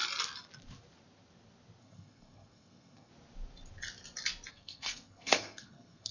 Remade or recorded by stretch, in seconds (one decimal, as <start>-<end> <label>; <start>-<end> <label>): 0.0-1.8 recorded; 1.8-3.1 remade; 3.1-4.5 recorded; 4.5-6.1 remade